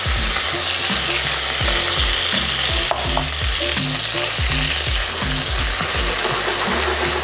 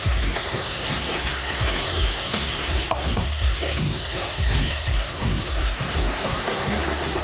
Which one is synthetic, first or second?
second